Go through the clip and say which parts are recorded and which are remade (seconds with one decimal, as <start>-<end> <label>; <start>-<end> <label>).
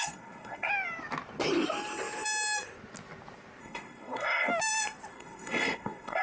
0.0-0.7 remade; 0.7-3.6 recorded; 3.6-4.5 remade; 4.5-5.1 recorded; 5.1-6.2 remade